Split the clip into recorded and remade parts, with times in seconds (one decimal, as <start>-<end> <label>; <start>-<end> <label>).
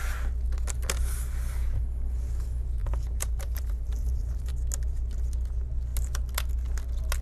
0.0-2.8 recorded; 2.8-4.5 remade; 4.5-7.2 recorded